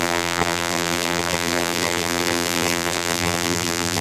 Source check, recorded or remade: remade